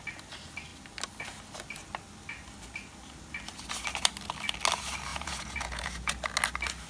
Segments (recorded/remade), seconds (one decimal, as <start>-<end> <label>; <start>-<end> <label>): 0.0-5.1 recorded; 5.1-6.1 remade; 6.1-6.9 recorded